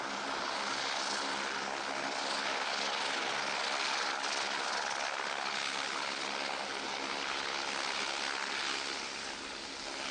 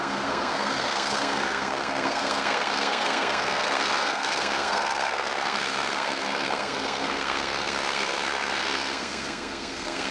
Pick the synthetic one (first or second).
second